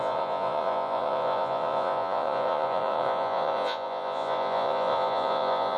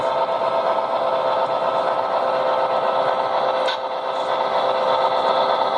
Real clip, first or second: second